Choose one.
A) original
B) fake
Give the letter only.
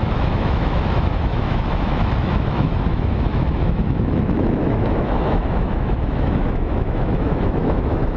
B